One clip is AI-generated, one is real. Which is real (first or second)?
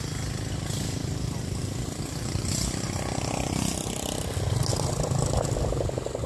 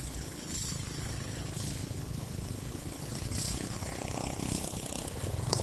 first